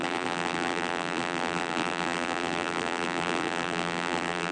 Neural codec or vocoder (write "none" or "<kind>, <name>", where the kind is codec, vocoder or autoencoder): vocoder, BigVGAN v2